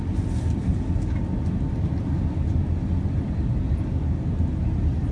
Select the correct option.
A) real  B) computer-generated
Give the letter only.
A